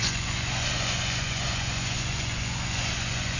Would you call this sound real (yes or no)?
no